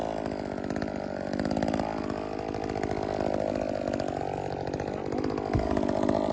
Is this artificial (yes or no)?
yes